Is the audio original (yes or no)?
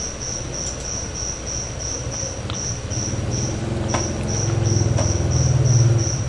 yes